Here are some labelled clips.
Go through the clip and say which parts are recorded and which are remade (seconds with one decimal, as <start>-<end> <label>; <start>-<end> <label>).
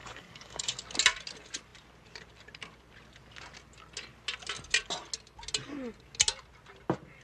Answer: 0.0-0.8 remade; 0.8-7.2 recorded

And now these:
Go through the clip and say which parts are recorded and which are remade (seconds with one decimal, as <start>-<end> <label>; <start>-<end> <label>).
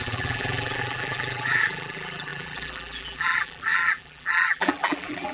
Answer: 0.0-5.3 remade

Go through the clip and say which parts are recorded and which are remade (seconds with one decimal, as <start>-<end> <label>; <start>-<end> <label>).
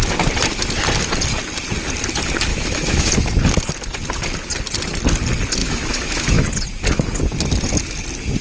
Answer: 0.0-2.5 recorded; 2.5-3.1 remade; 3.1-5.6 recorded; 5.6-6.4 remade; 6.4-8.4 recorded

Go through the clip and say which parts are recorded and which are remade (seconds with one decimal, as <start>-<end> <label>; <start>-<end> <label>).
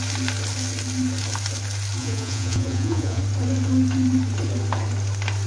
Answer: 0.0-2.0 recorded; 2.0-3.2 remade; 3.2-5.5 recorded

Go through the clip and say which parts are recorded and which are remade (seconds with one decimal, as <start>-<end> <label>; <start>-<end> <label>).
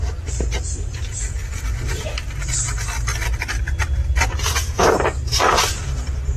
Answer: 0.0-1.2 recorded; 1.2-2.4 remade; 2.4-6.4 recorded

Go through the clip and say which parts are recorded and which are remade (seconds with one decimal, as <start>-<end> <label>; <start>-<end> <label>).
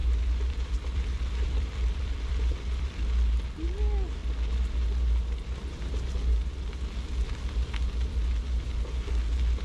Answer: 0.0-3.0 remade; 3.0-9.6 recorded